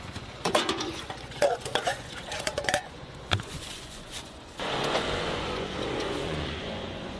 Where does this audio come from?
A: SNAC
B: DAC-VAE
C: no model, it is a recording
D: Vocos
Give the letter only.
D